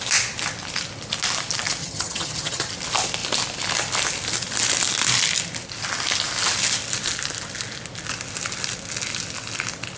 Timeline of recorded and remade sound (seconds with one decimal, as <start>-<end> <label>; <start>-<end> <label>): 0.0-1.8 recorded; 1.8-2.7 remade; 2.7-10.0 recorded